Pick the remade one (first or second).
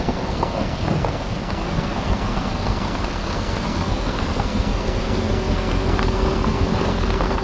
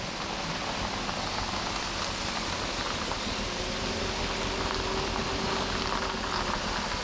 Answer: first